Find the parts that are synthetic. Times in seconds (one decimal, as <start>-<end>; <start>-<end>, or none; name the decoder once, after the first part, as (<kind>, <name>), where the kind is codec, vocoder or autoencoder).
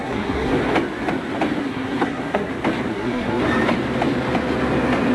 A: 0.0-0.6 (codec, SNAC); 1.6-2.5; 2.9-3.4